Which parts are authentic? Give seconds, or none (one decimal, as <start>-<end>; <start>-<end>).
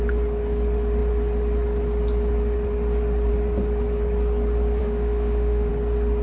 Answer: 0.0-4.8; 5.7-6.2